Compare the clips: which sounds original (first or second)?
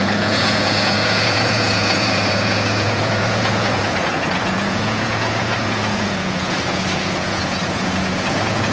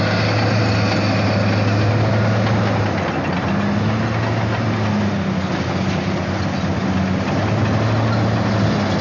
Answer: second